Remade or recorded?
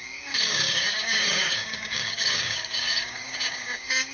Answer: remade